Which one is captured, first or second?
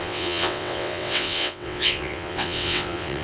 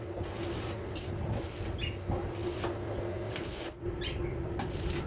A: second